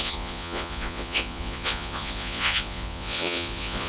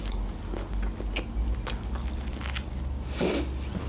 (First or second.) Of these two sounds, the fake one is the first